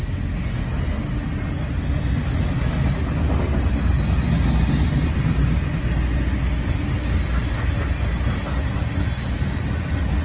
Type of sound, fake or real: real